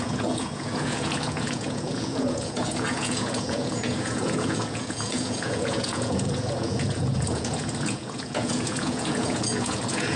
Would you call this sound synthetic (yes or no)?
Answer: yes